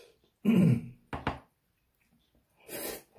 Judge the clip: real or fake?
real